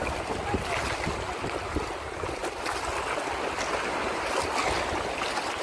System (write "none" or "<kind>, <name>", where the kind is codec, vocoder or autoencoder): none